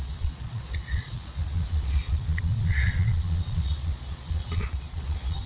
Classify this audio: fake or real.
fake